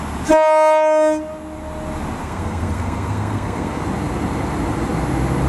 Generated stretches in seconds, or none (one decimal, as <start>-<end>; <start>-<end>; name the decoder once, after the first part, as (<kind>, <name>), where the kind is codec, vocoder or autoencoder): 2.2-3.8 (codec, SNAC)